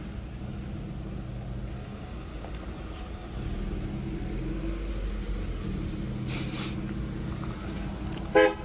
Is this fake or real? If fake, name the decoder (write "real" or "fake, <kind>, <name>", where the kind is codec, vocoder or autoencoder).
real